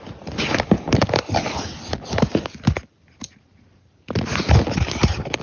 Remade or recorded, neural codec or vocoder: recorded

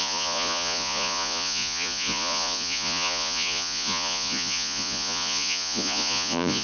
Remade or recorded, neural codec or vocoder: remade, vocoder, Vocos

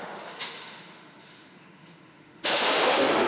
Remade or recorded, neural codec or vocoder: remade, autoencoder, DAC-VAE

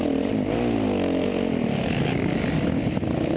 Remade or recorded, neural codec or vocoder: recorded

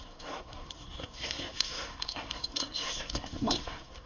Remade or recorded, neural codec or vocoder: remade, codec, SNAC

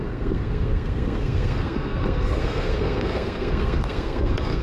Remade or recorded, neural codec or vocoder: remade, codec, SNAC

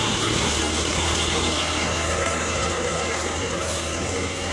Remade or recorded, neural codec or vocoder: remade, codec, SNAC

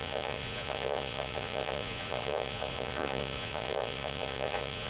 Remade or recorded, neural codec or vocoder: remade, vocoder, Vocos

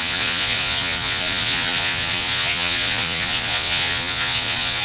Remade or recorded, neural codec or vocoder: remade, vocoder, Vocos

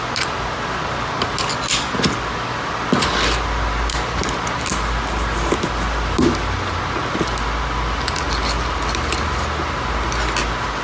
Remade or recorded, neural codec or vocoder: recorded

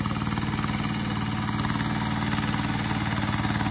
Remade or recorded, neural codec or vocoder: recorded